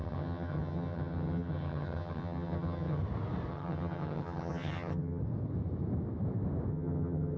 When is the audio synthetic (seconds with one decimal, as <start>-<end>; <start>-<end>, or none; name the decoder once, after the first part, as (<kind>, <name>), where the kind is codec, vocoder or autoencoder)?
0.0-3.0 (vocoder, HiFi-GAN); 3.5-5.2; 6.7-7.4